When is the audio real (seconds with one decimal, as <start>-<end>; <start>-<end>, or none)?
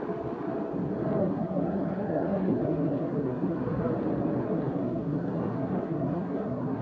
0.0-1.2; 3.9-4.4